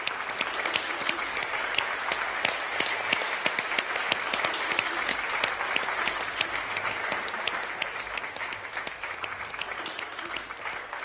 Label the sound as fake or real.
real